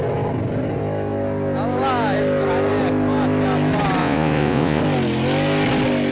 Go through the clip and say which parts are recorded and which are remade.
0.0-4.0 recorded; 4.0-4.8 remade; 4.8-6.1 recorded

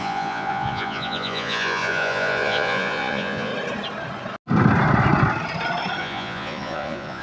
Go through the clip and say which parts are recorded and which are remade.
0.0-3.5 remade; 3.5-6.0 recorded; 6.0-7.2 remade

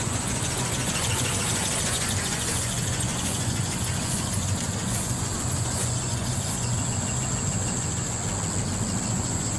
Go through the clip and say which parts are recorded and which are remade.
0.0-8.2 remade; 8.2-9.1 recorded; 9.1-9.6 remade

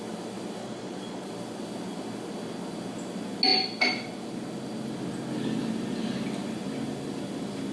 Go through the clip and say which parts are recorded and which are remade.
0.0-0.6 recorded; 0.6-1.3 remade; 1.3-7.7 recorded